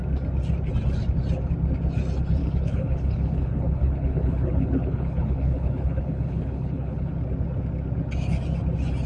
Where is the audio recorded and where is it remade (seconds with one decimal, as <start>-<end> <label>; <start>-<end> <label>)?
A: 0.0-2.4 recorded; 2.4-7.1 remade; 7.1-9.1 recorded

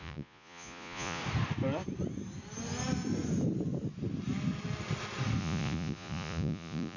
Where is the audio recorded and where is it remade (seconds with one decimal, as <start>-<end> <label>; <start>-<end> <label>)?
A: 0.0-1.2 remade; 1.2-5.4 recorded; 5.4-7.0 remade

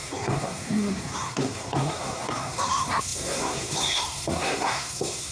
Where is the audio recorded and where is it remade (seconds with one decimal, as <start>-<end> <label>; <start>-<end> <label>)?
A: 0.0-5.3 remade

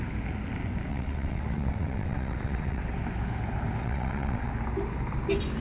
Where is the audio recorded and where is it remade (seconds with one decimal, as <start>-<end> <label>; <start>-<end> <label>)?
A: 0.0-0.9 recorded; 0.9-2.8 remade; 2.8-3.8 recorded; 3.8-4.5 remade; 4.5-5.6 recorded